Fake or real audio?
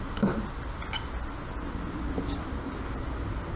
real